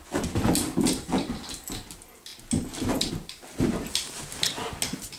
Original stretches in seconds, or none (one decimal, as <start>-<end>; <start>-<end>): 0.0-5.2